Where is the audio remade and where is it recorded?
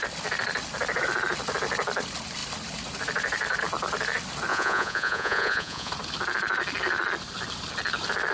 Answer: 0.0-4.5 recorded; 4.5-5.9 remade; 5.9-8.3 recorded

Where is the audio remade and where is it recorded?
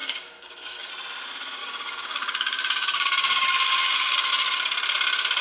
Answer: 0.0-0.9 remade; 0.9-1.6 recorded; 1.6-4.3 remade; 4.3-5.4 recorded